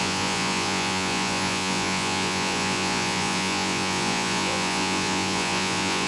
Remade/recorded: remade